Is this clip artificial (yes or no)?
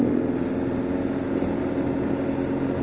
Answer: no